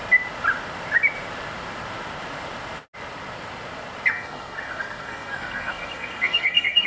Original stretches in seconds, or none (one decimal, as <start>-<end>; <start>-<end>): 0.0-4.1